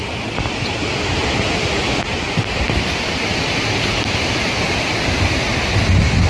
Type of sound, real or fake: real